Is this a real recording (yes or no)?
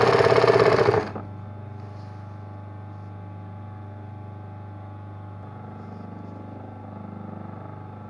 yes